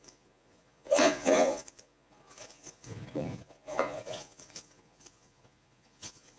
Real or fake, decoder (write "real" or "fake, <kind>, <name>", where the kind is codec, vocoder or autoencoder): fake, vocoder, Vocos